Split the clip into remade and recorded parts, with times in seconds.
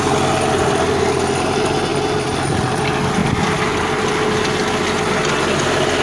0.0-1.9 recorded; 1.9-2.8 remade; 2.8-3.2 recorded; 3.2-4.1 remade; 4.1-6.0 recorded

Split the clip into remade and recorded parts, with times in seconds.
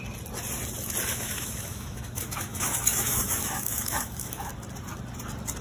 0.0-1.1 recorded; 1.1-4.5 remade; 4.5-5.6 recorded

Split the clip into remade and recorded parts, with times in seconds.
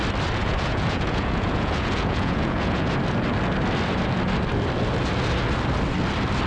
0.0-0.4 recorded; 0.4-2.9 remade; 2.9-6.5 recorded